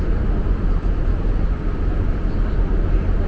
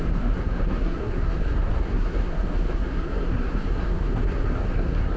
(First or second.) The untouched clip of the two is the first